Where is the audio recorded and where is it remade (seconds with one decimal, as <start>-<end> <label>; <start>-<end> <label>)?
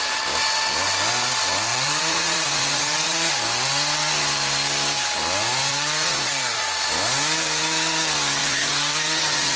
0.0-1.7 recorded; 1.7-3.3 remade; 3.3-5.7 recorded; 5.7-6.6 remade; 6.6-8.4 recorded; 8.4-9.6 remade